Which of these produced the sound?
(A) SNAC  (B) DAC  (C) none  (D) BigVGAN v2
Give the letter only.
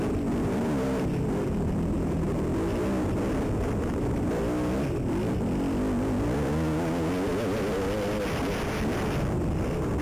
C